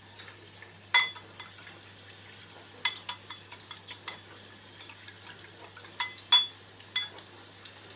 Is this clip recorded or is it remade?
recorded